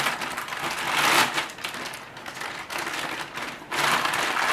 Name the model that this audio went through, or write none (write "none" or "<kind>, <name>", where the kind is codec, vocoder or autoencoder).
none